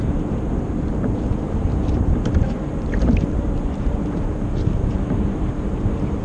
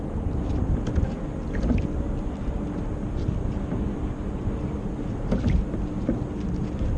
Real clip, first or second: second